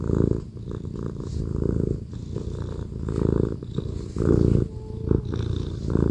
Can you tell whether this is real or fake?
real